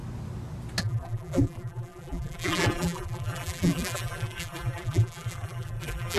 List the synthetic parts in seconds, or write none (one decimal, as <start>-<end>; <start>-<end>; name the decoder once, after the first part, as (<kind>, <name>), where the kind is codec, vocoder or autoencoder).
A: 0.8-6.2 (vocoder, BigVGAN v2)

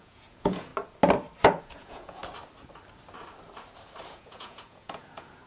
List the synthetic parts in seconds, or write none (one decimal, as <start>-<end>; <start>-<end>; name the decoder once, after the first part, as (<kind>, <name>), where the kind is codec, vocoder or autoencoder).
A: 0.0-0.7 (vocoder, Vocos); 1.6-2.2; 4.1-5.5

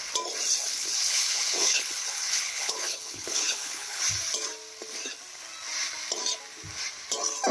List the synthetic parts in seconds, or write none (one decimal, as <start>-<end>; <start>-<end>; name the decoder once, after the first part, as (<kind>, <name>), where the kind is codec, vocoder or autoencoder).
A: 0.7-4.0 (codec, HILCodec)

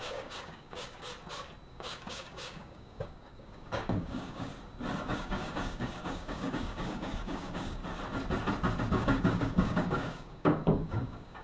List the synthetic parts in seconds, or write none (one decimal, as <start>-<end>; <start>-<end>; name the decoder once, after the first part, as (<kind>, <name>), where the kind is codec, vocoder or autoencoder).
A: 0.0-1.1 (codec, DAC); 1.7-4.5; 5.0-7.8; 8.9-11.4

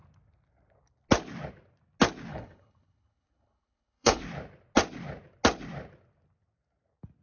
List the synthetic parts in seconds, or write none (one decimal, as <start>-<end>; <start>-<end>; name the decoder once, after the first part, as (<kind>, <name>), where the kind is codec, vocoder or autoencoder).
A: 2.3-4.2 (codec, HILCodec)

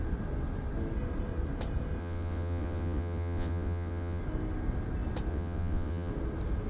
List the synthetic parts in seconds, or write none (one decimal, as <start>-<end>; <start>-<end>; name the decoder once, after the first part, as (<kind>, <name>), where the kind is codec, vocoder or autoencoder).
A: 2.0-4.2 (vocoder, WaveNeXt); 5.3-6.1